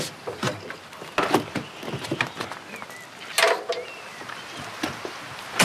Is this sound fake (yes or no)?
no